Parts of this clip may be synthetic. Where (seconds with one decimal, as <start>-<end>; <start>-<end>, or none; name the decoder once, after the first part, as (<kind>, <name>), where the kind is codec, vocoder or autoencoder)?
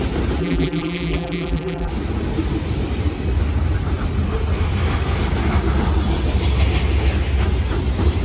0.4-1.9 (vocoder, BigVGAN v2)